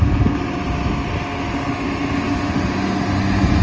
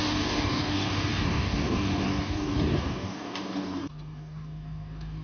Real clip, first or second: first